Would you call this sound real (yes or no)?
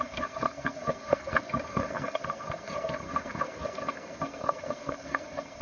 no